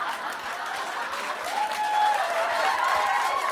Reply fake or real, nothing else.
real